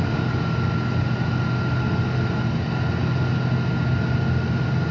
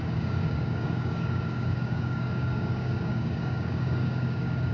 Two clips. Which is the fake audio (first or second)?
second